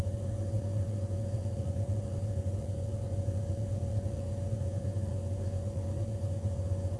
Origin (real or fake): fake